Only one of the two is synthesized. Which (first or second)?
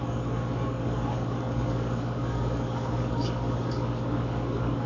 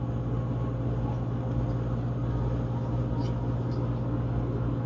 first